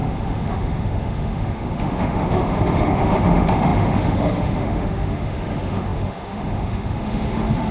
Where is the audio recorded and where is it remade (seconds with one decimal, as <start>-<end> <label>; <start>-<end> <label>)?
0.0-7.7 remade